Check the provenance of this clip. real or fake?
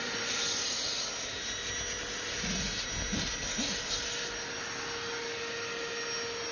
real